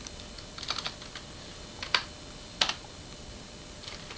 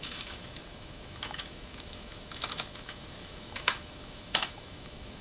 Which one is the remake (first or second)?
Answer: second